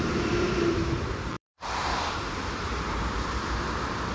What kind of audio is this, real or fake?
fake